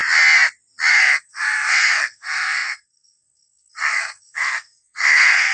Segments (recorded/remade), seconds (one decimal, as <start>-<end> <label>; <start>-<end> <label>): 0.0-0.9 recorded; 0.9-5.5 remade